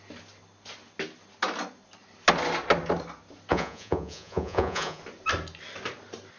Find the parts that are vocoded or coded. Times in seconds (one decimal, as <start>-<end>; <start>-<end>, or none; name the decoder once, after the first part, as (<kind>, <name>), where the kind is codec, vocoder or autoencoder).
3.5-5.0 (vocoder, Vocos)